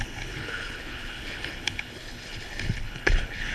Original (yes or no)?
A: no